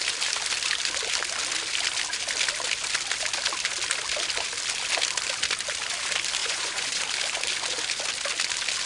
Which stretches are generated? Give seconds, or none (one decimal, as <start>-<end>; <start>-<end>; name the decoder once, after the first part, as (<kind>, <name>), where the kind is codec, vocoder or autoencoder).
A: 6.4-7.0 (vocoder, Vocos)